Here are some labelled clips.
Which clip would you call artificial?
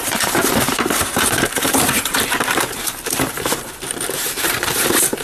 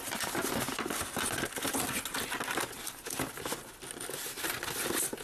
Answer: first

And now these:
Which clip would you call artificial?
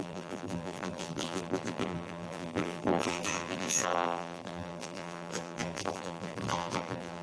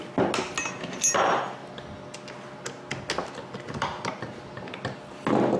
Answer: first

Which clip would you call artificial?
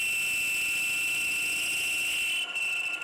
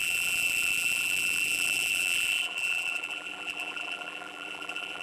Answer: second